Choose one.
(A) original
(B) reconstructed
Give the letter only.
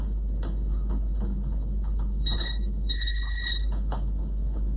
B